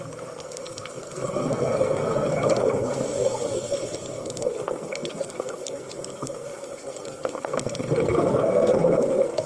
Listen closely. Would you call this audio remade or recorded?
remade